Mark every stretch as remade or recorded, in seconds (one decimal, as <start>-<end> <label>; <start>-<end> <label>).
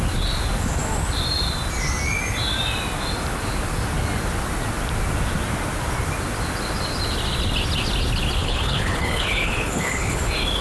0.0-8.4 recorded; 8.4-10.2 remade; 10.2-10.6 recorded